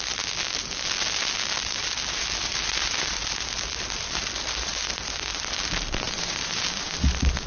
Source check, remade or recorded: recorded